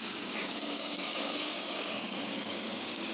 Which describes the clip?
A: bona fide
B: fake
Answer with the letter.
B